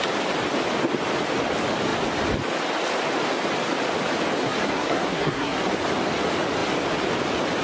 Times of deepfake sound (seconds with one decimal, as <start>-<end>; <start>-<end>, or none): 4.4-5.6